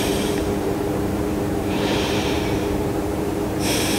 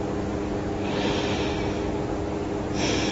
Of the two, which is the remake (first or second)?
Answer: first